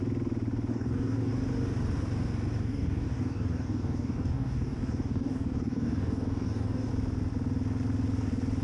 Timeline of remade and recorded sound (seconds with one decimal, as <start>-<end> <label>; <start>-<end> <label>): 0.0-0.7 recorded; 0.7-1.3 remade; 1.3-2.6 recorded; 2.6-6.9 remade; 6.9-8.6 recorded